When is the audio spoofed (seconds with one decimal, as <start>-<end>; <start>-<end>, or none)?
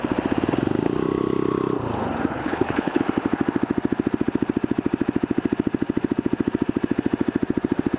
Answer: 2.4-3.0